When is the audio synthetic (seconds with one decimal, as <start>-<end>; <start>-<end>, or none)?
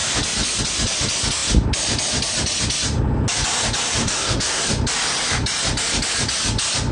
4.0-4.6